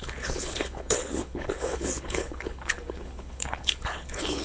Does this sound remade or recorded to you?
remade